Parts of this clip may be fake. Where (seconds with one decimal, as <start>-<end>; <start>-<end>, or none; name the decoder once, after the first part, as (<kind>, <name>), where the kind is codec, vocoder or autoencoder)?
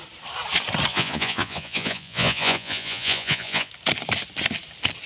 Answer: 0.9-3.7 (vocoder, Vocos)